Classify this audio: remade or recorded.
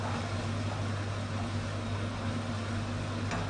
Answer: recorded